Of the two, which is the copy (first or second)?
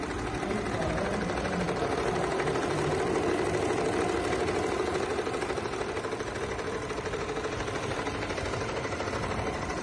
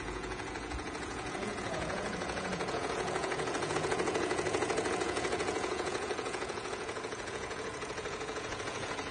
second